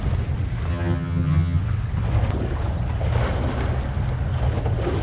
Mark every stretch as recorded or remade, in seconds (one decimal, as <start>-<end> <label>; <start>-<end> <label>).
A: 0.0-0.7 recorded; 0.7-1.6 remade; 1.6-5.0 recorded

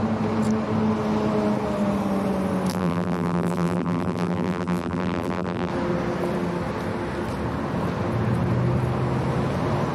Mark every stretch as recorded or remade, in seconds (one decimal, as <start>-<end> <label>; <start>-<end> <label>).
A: 0.0-2.7 recorded; 2.7-5.7 remade; 5.7-9.9 recorded

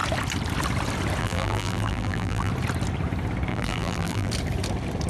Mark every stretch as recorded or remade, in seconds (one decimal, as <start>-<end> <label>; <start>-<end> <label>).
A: 0.0-1.2 recorded; 1.2-2.5 remade; 2.5-3.5 recorded; 3.5-4.3 remade; 4.3-5.1 recorded

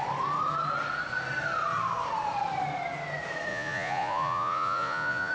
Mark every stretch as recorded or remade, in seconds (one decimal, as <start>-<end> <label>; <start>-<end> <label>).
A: 0.0-3.5 recorded; 3.5-5.3 remade

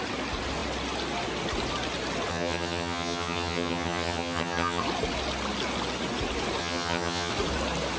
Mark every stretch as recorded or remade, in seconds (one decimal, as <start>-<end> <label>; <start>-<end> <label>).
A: 0.0-2.3 recorded; 2.3-4.8 remade; 4.8-6.6 recorded; 6.6-7.3 remade; 7.3-8.0 recorded

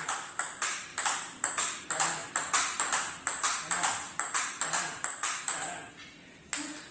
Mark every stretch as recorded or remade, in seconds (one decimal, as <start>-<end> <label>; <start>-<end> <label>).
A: 0.0-6.9 recorded